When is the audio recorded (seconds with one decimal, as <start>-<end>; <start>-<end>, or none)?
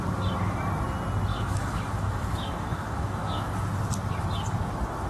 0.0-1.3; 3.4-5.1